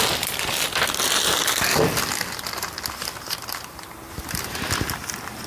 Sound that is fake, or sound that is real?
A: real